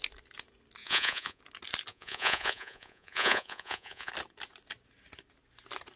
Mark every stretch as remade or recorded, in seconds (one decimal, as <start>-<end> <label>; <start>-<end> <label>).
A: 0.0-0.8 recorded; 0.8-1.4 remade; 1.4-1.9 recorded; 1.9-4.1 remade; 4.1-6.0 recorded